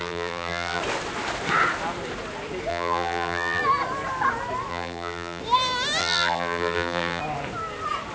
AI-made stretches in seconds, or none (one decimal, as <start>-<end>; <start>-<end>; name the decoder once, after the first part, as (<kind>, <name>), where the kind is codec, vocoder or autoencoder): 0.0-0.8 (vocoder, BigVGAN v2); 2.7-3.6; 4.7-5.4; 6.0-7.2